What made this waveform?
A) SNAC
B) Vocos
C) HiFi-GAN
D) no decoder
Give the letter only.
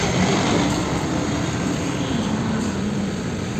D